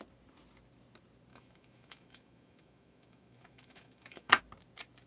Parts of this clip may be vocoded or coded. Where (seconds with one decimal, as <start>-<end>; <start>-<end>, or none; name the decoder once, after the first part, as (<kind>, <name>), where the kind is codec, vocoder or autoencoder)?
1.3-4.4 (autoencoder, DAC-VAE)